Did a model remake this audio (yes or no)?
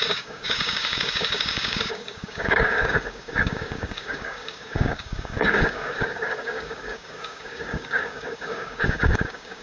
yes